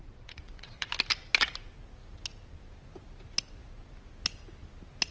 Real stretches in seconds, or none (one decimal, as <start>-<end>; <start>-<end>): 0.9-5.1